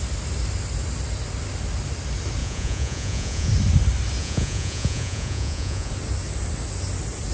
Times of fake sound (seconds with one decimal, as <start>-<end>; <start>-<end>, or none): 2.4-3.5; 4.2-5.9